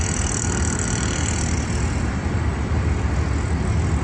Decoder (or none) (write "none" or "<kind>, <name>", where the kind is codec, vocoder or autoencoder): none